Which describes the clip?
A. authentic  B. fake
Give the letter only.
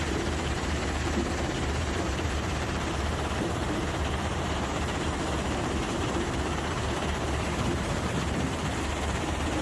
B